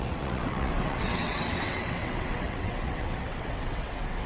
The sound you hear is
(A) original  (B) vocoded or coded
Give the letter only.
B